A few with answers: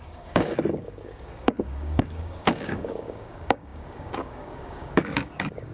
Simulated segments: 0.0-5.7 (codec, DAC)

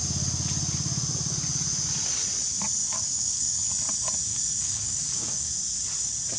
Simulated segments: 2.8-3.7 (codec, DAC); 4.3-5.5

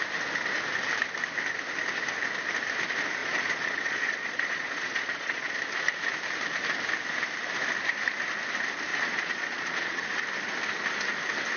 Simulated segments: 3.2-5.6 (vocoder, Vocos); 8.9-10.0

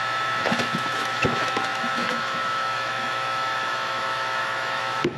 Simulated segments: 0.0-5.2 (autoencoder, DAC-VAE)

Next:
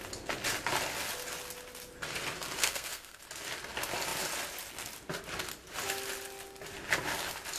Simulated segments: 2.6-3.2 (codec, SNAC)

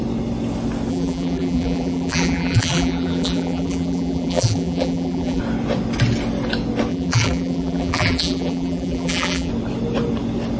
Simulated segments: 0.9-5.4 (vocoder, BigVGAN v2); 6.9-9.5

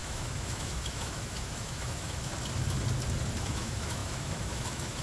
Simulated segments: 0.0-2.3 (autoencoder, DAC-VAE); 3.4-5.0

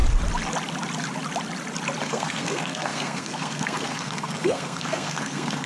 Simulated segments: 2.0-5.7 (codec, SNAC)